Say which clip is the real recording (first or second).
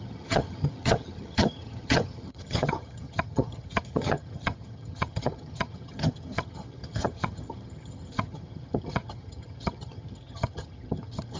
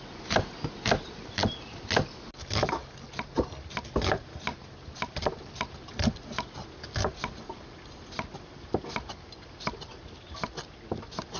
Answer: second